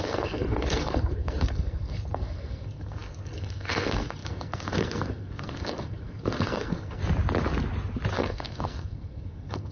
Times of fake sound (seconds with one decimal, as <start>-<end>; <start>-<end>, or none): 0.0-7.0; 8.1-9.7